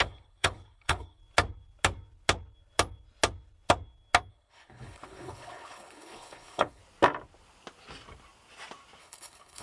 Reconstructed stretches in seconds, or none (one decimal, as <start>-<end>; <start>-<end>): 0.0-1.2; 4.3-6.8; 9.0-9.6